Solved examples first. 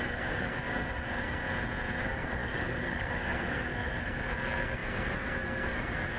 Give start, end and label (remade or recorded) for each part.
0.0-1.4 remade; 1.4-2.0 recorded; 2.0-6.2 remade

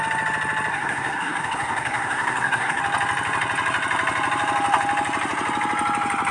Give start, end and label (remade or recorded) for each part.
0.0-0.7 recorded; 0.7-2.8 remade; 2.8-6.3 recorded

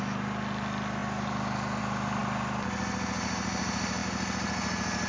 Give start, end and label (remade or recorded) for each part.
0.0-5.1 recorded

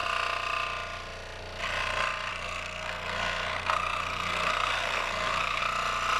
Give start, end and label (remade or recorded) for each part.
0.0-2.3 recorded; 2.3-5.6 remade; 5.6-6.2 recorded

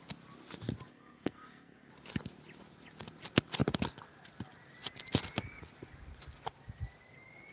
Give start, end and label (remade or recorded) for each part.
0.0-0.9 recorded; 0.9-1.9 remade; 1.9-7.5 recorded

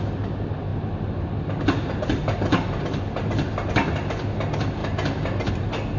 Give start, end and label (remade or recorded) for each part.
0.0-6.0 recorded